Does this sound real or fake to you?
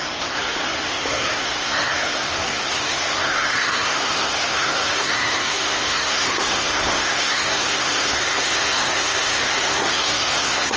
fake